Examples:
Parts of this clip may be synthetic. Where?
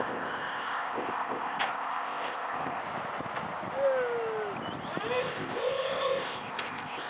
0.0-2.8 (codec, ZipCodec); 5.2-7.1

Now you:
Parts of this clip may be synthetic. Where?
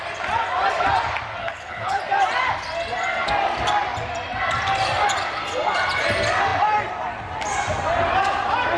1.4-2.0 (codec, HILCodec)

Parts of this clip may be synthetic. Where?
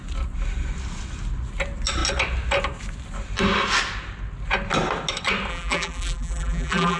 5.5-7.0 (vocoder, BigVGAN v2)